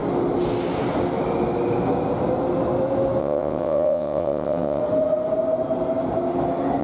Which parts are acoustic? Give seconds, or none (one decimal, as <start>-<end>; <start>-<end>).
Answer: 0.0-3.2; 4.8-6.8